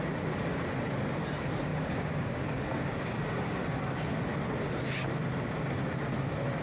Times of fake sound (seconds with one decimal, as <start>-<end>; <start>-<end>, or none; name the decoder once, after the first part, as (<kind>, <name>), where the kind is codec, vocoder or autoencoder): 1.7-3.8 (codec, DAC)